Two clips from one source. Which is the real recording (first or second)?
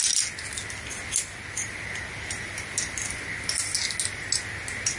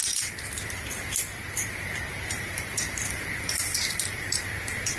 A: first